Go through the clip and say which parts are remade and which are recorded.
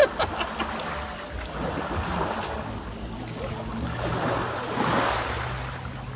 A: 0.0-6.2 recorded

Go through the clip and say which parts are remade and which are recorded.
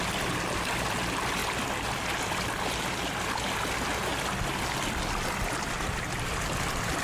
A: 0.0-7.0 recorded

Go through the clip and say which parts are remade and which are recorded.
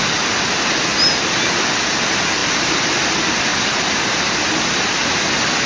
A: 0.0-5.7 recorded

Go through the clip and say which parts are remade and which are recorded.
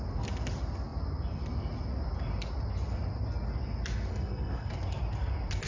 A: 0.0-4.1 recorded; 4.1-4.7 remade; 4.7-5.7 recorded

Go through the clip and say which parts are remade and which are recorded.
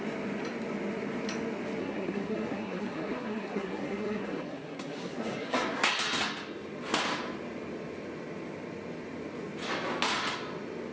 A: 0.0-1.8 recorded; 1.8-5.9 remade; 5.9-10.9 recorded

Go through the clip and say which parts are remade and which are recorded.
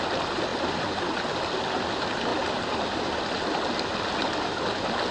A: 0.0-5.1 recorded